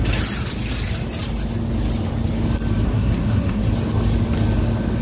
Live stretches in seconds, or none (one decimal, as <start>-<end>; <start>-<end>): 0.0-2.8; 3.7-5.0